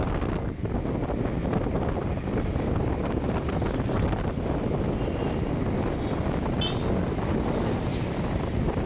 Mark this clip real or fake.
real